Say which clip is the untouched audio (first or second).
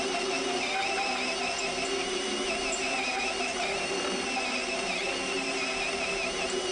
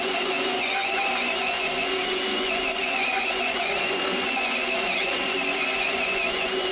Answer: first